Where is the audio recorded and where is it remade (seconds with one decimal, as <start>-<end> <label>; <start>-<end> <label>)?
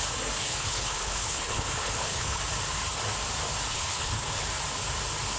0.0-0.4 recorded; 0.4-2.4 remade; 2.4-3.7 recorded; 3.7-4.4 remade; 4.4-5.4 recorded